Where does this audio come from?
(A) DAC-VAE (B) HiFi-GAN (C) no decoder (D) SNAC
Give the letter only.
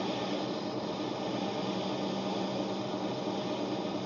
C